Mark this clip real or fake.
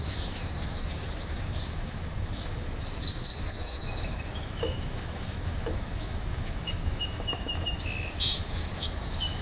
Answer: fake